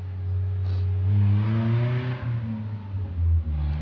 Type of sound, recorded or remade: recorded